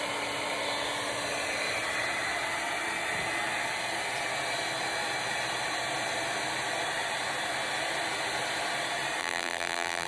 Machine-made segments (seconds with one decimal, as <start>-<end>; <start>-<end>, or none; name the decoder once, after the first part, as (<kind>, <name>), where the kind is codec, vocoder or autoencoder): 9.2-10.1 (vocoder, BigVGAN v2)